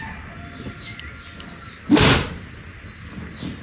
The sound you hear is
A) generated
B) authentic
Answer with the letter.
B